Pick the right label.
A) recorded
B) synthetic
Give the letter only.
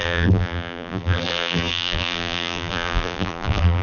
B